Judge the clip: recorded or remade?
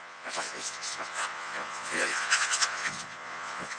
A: remade